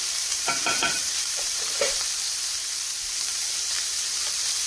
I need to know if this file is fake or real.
fake